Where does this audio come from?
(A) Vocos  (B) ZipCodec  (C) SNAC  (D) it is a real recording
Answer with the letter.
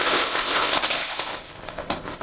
B